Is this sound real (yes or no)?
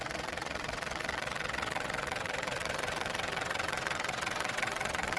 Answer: no